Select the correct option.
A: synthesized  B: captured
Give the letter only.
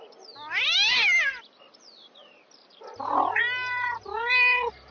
B